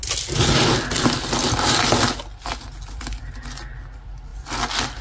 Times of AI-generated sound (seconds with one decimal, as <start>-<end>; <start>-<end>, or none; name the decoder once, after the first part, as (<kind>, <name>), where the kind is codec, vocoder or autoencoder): none